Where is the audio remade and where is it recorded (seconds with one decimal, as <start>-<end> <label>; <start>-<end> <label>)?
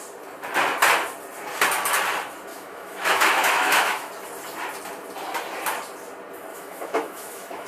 0.0-2.5 recorded; 2.5-4.1 remade; 4.1-6.5 recorded; 6.5-7.7 remade